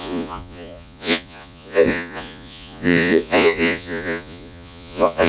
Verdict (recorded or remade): remade